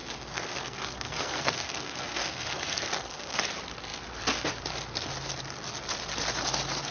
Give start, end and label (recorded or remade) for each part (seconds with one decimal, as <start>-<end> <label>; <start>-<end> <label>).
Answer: 0.0-3.4 remade; 3.4-6.9 recorded